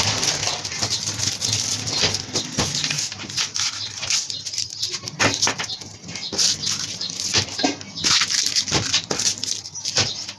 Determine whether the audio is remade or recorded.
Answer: recorded